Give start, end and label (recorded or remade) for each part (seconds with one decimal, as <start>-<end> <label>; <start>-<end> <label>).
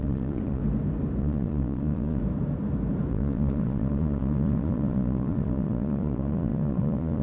0.0-0.6 remade; 0.6-1.2 recorded; 1.2-2.2 remade; 2.2-3.1 recorded; 3.1-7.2 remade